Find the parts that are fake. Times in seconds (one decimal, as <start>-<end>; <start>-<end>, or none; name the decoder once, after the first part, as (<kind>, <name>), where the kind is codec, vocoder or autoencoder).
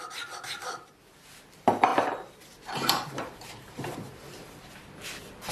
1.9-4.7 (vocoder, BigVGAN v2)